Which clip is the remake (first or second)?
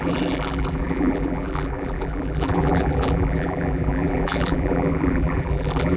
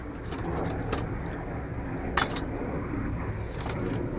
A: first